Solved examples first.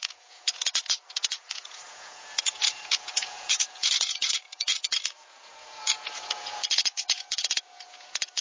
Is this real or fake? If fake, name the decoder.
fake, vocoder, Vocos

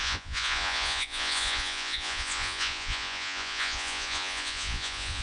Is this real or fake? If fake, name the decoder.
fake, vocoder, Vocos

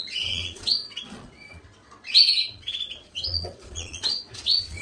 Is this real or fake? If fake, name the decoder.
fake, vocoder, Vocos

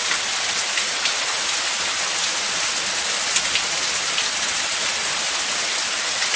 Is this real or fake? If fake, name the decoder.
real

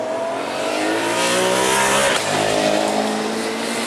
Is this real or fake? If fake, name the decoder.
real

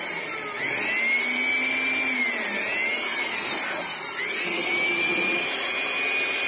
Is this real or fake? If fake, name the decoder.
real